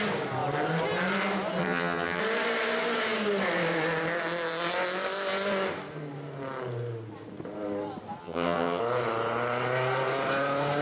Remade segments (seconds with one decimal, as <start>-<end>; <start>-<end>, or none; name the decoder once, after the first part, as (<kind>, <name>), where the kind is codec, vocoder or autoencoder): 1.6-2.2 (vocoder, HiFi-GAN); 8.2-8.8